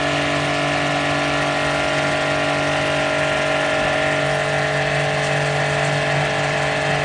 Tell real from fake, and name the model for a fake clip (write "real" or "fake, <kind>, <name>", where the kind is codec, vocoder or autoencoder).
real